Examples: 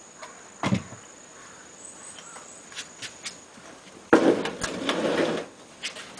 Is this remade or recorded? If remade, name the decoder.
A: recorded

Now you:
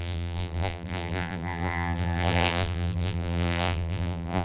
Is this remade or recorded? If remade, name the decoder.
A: remade, vocoder, BigVGAN v2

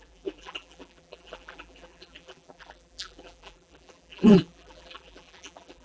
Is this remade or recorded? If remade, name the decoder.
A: remade, vocoder, BigVGAN v2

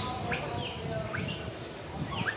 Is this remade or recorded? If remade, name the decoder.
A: recorded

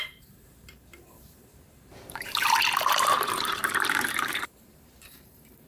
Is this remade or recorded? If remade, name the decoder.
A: remade, vocoder, BigVGAN v2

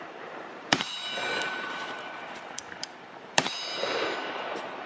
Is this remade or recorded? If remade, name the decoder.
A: remade, vocoder, BigVGAN v2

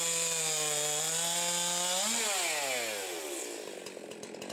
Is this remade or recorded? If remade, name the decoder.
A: recorded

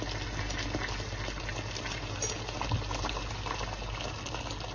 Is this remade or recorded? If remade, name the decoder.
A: recorded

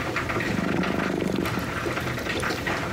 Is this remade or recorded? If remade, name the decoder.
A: recorded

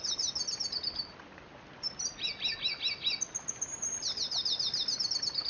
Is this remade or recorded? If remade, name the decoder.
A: recorded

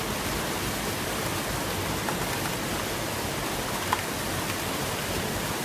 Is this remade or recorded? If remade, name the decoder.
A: recorded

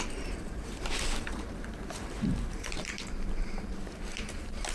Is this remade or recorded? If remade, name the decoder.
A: remade, vocoder, BigVGAN v2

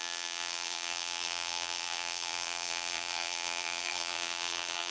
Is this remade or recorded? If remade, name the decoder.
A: remade, vocoder, BigVGAN v2